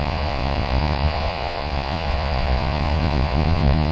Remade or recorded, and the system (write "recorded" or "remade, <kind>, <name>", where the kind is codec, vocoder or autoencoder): remade, vocoder, Vocos